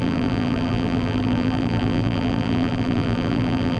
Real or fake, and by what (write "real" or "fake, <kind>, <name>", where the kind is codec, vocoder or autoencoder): fake, vocoder, BigVGAN v2